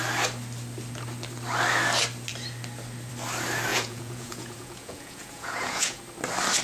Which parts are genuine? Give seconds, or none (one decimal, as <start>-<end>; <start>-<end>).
0.0-3.7; 6.0-6.6